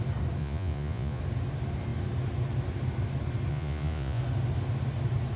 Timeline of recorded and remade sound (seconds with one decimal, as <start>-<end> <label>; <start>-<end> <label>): 0.0-0.4 recorded; 0.4-1.2 remade; 1.2-3.5 recorded; 3.5-4.2 remade; 4.2-5.4 recorded